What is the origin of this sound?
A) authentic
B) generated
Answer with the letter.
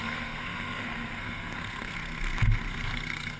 B